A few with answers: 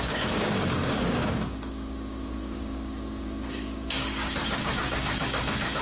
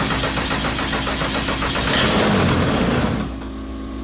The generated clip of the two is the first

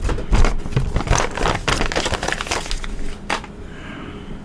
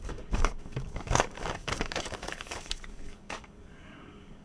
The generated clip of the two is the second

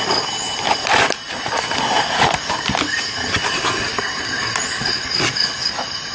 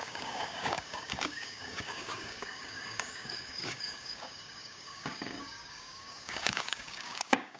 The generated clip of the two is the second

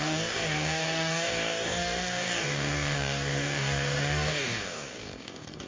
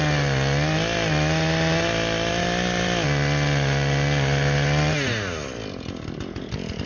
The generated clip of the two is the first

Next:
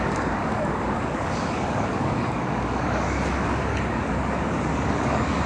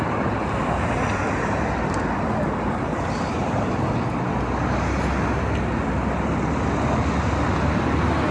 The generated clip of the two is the first